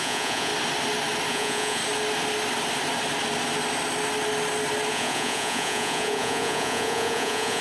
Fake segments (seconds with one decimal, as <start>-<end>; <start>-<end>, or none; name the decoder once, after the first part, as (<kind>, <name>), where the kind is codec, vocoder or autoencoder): 0.0-0.5 (vocoder, Vocos); 1.3-1.8; 4.9-7.6